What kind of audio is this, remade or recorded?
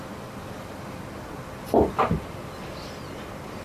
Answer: remade